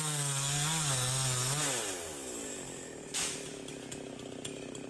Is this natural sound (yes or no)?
yes